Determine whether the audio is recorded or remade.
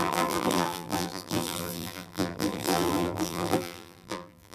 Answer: remade